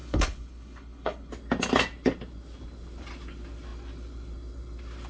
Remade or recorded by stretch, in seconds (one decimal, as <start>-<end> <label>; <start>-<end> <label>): 0.0-1.3 remade; 1.3-5.1 recorded